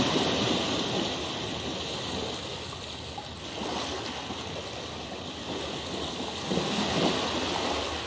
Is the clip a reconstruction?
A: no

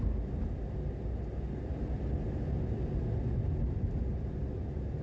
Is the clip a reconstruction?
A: no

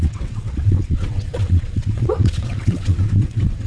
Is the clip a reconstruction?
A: yes